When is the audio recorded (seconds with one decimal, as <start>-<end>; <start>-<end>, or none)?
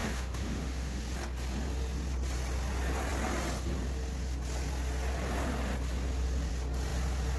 1.0-7.4